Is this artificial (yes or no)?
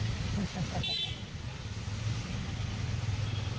no